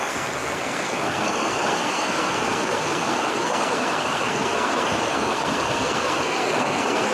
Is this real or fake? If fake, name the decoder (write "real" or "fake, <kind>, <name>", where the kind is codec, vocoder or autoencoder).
fake, codec, SNAC